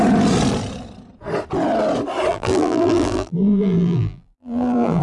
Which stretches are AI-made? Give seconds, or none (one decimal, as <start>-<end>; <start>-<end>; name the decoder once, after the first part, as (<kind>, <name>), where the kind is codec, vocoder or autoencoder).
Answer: 2.3-5.0 (vocoder, BigVGAN v2)